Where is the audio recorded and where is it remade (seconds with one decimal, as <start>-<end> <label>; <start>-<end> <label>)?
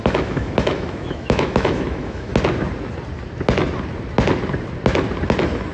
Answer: 0.0-2.3 remade; 2.3-5.7 recorded